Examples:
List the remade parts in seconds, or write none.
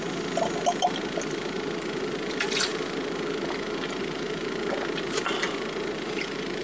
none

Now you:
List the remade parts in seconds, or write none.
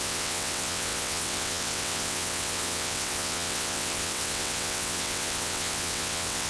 0.0-6.5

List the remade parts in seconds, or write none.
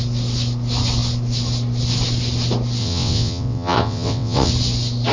2.8-4.5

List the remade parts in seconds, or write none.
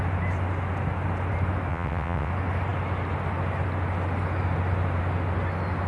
1.7-2.3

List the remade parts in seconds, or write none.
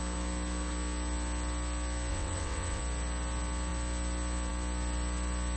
2.1-2.8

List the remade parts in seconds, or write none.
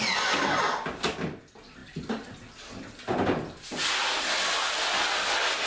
none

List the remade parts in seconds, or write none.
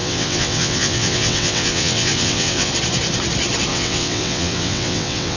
0.0-2.7; 3.7-5.4